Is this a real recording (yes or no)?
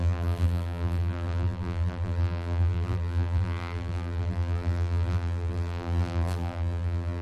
no